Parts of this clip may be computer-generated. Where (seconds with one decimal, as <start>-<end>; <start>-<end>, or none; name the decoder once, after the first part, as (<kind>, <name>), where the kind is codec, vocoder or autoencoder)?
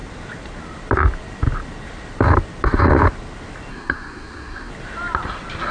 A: 3.7-4.7 (codec, SNAC)